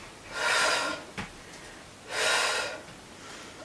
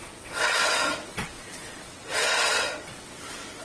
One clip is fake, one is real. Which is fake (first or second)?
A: second